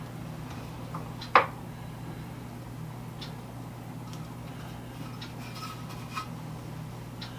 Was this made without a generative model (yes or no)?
yes